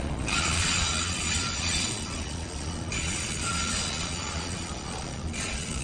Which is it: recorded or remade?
remade